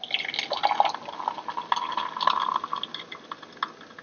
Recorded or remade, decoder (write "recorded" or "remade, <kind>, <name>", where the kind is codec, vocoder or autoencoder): recorded